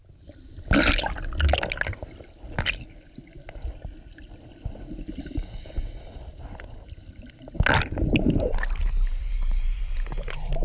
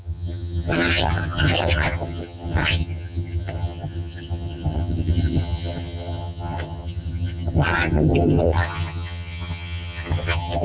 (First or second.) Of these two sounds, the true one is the first